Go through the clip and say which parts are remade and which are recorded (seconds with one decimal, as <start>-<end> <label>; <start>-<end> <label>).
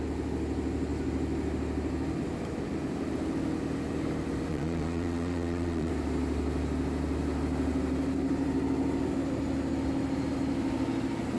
0.0-4.5 recorded; 4.5-5.9 remade; 5.9-11.4 recorded